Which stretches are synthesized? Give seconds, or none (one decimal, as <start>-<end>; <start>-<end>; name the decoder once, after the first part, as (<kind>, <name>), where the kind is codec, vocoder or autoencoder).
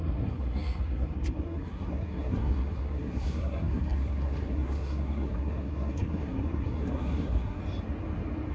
0.0-7.6 (codec, SNAC)